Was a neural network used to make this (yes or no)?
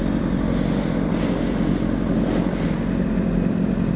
no